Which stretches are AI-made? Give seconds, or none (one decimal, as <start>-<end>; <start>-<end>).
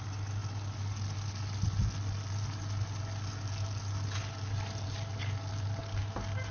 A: none